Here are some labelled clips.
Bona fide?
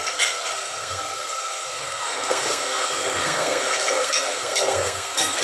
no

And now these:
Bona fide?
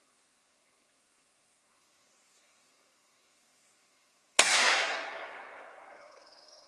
no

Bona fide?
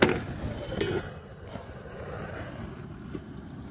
yes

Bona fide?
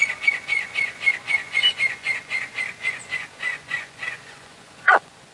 no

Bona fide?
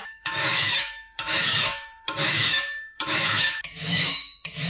no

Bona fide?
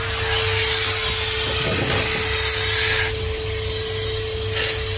yes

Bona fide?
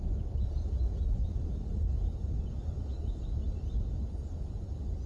yes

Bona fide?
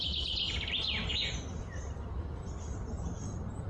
yes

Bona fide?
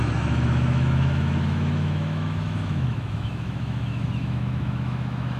no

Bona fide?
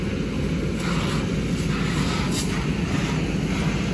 yes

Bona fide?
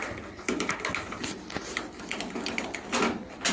yes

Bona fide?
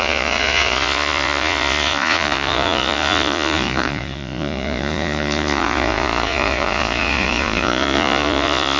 no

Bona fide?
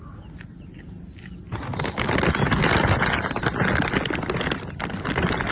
yes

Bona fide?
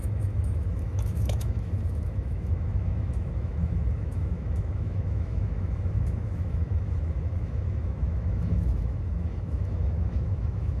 no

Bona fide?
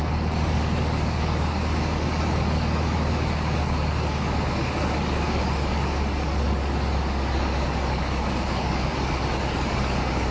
no